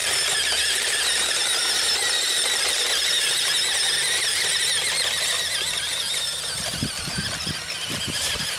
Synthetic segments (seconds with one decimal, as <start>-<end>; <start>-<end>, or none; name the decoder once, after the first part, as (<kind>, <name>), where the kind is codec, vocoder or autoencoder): 0.6-1.4 (vocoder, BigVGAN v2); 6.6-8.6